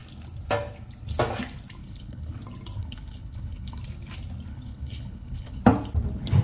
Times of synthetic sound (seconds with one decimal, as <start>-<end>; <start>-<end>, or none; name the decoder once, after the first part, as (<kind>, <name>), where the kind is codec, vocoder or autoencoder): 1.8-2.4 (codec, HILCodec); 2.8-3.8; 4.5-5.6